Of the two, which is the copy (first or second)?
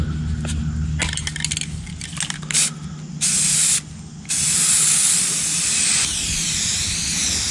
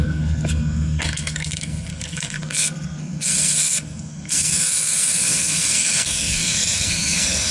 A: second